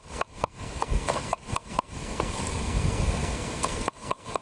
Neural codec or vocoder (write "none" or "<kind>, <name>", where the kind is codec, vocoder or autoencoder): codec, SNAC